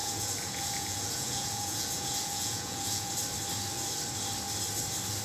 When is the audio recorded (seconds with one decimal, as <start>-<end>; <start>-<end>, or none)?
3.1-5.2